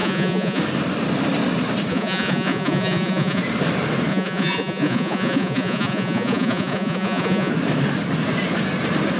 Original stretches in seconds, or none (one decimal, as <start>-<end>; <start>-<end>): 0.6-1.9; 3.4-4.1; 7.5-9.2